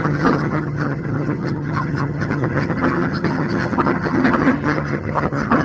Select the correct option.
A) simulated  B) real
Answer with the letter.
A